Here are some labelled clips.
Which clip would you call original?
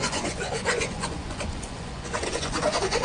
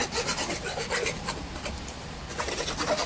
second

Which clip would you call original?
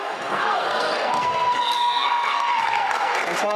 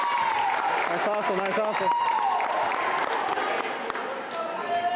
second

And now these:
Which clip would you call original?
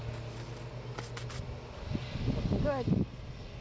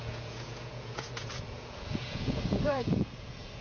first